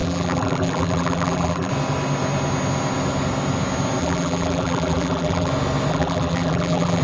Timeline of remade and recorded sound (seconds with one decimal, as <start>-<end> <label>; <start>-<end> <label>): 0.0-1.7 remade; 1.7-4.0 recorded; 4.0-5.5 remade; 5.5-5.9 recorded; 5.9-7.0 remade